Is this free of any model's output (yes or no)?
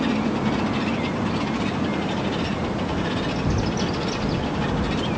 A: yes